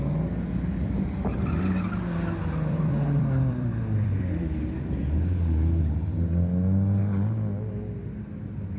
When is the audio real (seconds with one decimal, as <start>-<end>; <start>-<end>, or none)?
0.0-2.4; 5.8-7.0; 7.7-8.8